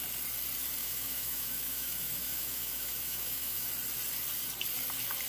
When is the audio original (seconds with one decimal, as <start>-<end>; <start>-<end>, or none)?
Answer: 0.0-0.8; 3.7-5.3